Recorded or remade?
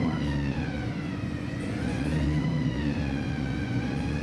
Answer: remade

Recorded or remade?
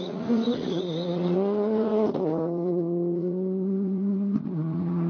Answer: remade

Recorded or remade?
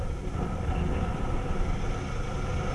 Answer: recorded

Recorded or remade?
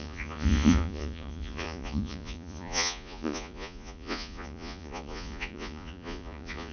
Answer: remade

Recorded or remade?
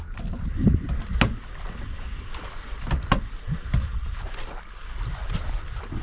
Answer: recorded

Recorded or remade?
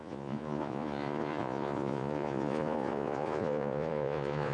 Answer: remade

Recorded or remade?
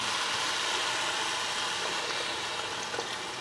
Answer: recorded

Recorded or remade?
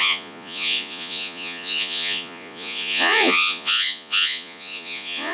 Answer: remade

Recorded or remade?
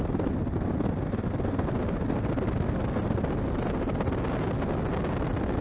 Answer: recorded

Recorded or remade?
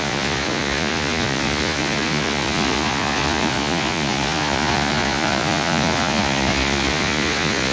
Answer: remade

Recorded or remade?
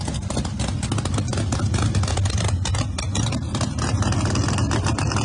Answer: recorded